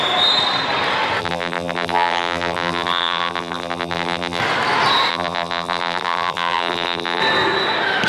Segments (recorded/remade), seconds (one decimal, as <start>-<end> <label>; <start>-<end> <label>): 0.0-1.2 recorded; 1.2-4.4 remade; 4.4-5.1 recorded; 5.1-7.2 remade; 7.2-8.1 recorded